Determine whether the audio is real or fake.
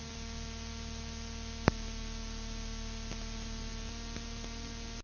real